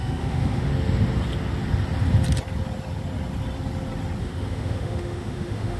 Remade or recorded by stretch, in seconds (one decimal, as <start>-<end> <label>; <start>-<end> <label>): 0.0-0.7 remade; 0.7-4.2 recorded; 4.2-5.8 remade